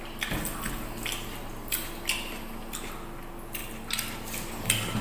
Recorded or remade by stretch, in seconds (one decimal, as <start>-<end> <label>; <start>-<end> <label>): 0.0-5.0 recorded

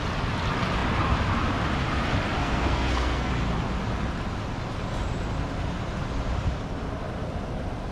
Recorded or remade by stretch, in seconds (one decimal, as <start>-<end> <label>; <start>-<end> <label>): 0.0-2.4 recorded; 2.4-3.3 remade; 3.3-7.9 recorded

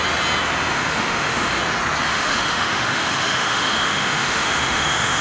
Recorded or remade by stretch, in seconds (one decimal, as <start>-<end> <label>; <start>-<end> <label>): 0.0-0.7 recorded; 0.7-1.6 remade; 1.6-2.1 recorded; 2.1-5.2 remade

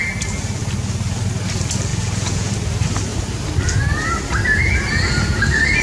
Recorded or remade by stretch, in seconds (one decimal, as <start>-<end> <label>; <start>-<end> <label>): 0.0-1.9 recorded; 1.9-2.5 remade; 2.5-5.8 recorded

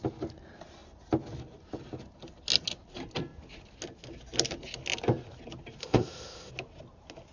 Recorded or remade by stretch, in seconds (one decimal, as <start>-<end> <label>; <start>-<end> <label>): 0.0-5.8 recorded; 5.8-6.5 remade; 6.5-7.3 recorded

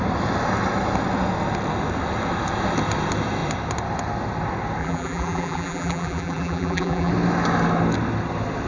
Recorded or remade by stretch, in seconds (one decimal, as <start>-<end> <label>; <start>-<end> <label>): 0.0-4.8 recorded; 4.8-7.1 remade; 7.1-8.7 recorded

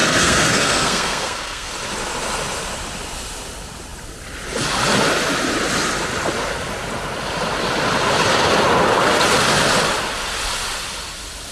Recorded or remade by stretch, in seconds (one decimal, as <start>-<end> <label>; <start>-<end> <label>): 0.0-1.7 remade; 1.7-11.5 recorded

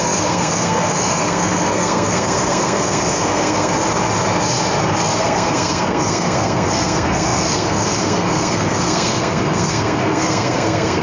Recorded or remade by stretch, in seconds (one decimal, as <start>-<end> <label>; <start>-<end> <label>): 0.0-3.7 remade; 3.7-5.0 recorded; 5.0-11.0 remade